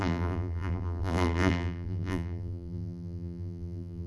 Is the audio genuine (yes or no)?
no